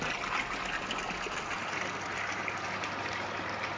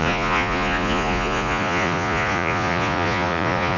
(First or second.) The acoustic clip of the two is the first